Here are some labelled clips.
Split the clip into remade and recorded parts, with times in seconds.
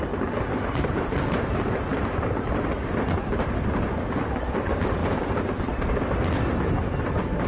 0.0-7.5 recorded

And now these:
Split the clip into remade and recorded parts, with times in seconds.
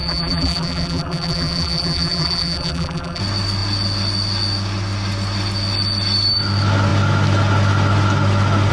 0.0-3.2 remade; 3.2-8.7 recorded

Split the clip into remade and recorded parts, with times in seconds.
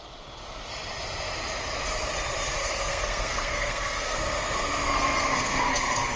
0.0-2.6 recorded; 2.6-6.2 remade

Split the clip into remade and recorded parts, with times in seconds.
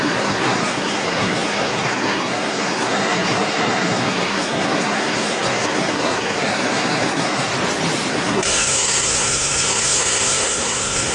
0.0-7.5 remade; 7.5-8.1 recorded; 8.1-11.1 remade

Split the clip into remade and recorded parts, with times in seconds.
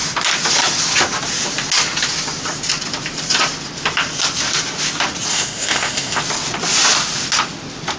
0.0-5.3 recorded; 5.3-6.2 remade; 6.2-8.0 recorded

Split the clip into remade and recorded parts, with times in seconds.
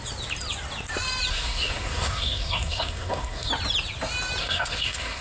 0.0-1.3 recorded; 1.3-3.5 remade; 3.5-4.4 recorded; 4.4-5.2 remade